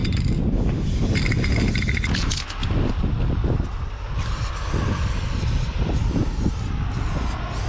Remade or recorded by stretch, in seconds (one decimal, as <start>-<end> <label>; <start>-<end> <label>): 0.0-0.5 remade; 0.5-2.6 recorded; 2.6-6.2 remade; 6.2-7.7 recorded